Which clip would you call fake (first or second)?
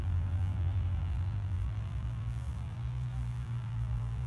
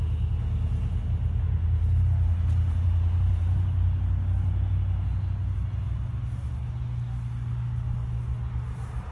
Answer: first